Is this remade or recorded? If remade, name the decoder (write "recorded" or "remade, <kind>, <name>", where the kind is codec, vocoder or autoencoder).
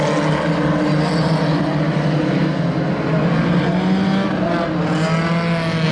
recorded